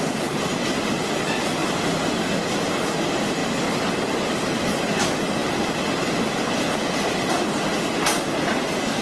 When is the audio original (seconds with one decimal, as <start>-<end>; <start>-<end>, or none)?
1.6-2.4; 5.4-6.5; 7.7-9.0